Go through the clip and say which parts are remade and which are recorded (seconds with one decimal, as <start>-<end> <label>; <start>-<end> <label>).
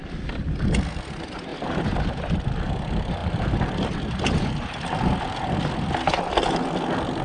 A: 0.0-7.2 recorded